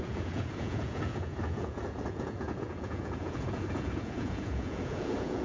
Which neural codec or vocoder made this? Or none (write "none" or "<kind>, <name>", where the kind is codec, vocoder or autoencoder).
vocoder, Vocos